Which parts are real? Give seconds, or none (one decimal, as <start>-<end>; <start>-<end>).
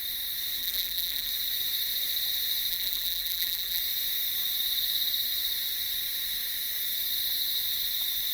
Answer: 0.0-0.6; 1.3-2.7; 3.8-8.3